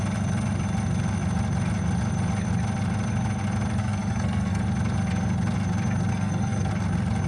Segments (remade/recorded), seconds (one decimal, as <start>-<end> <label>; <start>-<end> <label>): 0.0-3.8 recorded; 3.8-4.6 remade; 4.6-6.1 recorded; 6.1-6.7 remade; 6.7-7.3 recorded

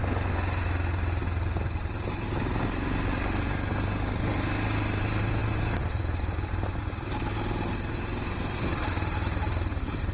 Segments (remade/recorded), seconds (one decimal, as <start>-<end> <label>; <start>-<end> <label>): 0.0-10.1 recorded